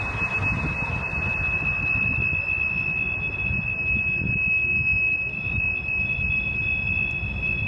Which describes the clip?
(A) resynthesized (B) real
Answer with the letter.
B